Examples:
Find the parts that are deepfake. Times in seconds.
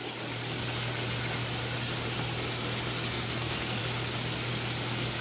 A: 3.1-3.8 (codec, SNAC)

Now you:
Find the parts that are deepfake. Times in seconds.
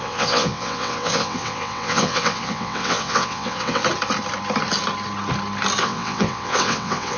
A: 0.0-3.8 (vocoder, WaveNeXt); 5.8-7.2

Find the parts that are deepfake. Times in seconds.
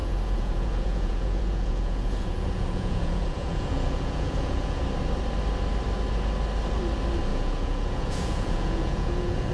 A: 0.0-4.8 (vocoder, Vocos); 7.3-9.5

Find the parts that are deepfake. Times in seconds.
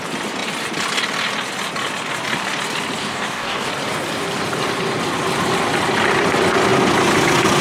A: 3.0-3.7 (codec, DAC)